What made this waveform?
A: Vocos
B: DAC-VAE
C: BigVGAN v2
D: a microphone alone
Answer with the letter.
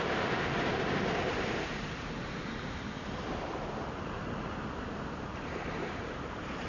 C